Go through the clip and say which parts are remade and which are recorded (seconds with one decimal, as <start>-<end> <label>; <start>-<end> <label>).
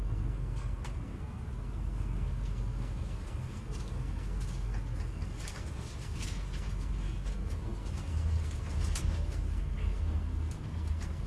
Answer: 0.0-11.3 remade